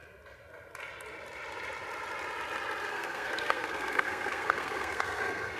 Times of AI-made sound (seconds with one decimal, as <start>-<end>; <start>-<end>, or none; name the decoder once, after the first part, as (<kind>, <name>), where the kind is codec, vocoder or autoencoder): 2.9-5.6 (codec, SNAC)